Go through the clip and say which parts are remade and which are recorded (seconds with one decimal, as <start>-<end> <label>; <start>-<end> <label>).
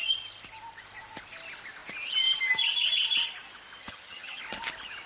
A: 0.0-3.8 recorded; 3.8-4.4 remade; 4.4-5.1 recorded